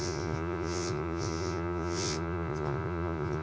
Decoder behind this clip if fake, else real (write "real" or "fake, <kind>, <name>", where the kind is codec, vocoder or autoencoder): fake, vocoder, Vocos